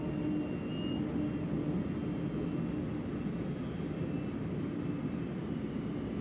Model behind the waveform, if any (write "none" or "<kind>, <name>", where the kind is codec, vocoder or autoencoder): none